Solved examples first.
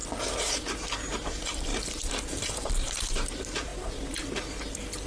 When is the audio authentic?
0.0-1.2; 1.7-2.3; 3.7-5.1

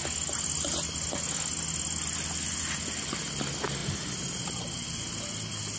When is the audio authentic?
0.0-5.8

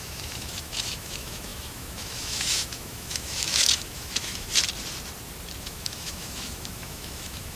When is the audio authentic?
4.5-5.6

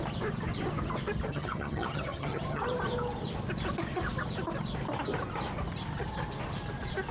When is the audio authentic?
0.0-1.3; 2.6-7.1